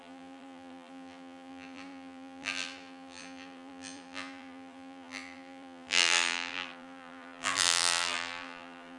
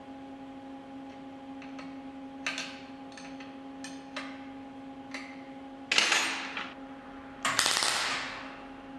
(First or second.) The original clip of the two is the second